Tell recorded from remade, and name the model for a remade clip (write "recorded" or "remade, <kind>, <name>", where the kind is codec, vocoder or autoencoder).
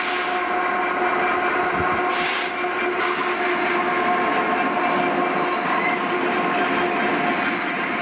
recorded